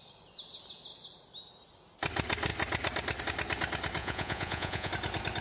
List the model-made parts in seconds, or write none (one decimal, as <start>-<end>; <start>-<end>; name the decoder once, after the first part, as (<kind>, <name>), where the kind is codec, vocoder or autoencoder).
4.0-4.9 (vocoder, Vocos)